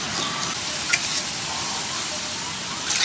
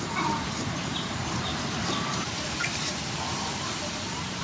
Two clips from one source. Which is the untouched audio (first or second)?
first